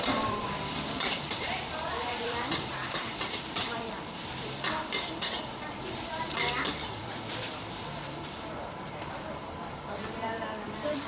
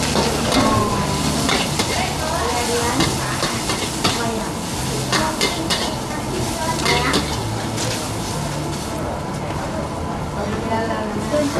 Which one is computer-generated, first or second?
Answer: first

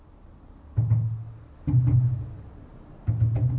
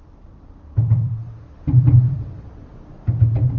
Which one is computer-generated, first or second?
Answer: second